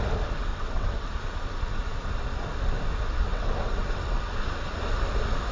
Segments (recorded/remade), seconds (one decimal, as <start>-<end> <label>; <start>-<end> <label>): 0.0-0.5 recorded; 0.5-1.1 remade; 1.1-3.3 recorded; 3.3-4.3 remade; 4.3-5.5 recorded